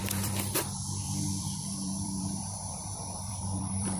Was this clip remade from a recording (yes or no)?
yes